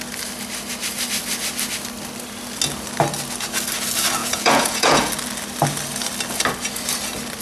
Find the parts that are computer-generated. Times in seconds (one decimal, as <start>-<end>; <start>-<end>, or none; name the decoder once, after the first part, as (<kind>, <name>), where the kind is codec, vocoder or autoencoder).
4.2-5.1 (vocoder, Vocos)